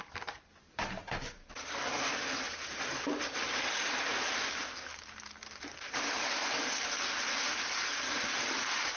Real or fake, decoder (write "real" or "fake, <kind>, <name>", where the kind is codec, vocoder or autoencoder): fake, vocoder, BigVGAN v2